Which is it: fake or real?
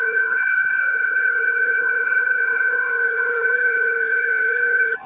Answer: fake